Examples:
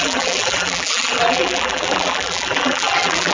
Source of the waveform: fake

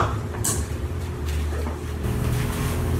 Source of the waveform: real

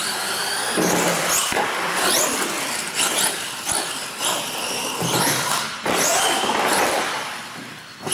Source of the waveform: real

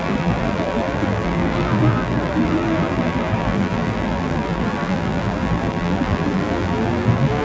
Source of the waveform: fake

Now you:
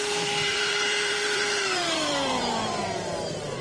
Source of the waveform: fake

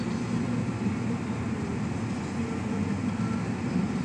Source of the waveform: real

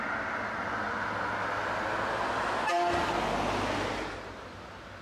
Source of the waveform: real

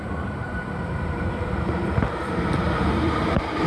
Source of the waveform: fake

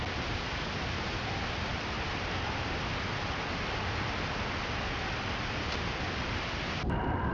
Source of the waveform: real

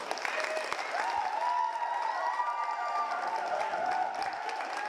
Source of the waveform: real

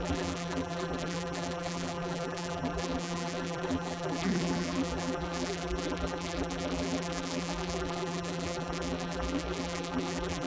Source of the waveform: fake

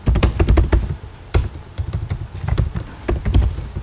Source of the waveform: fake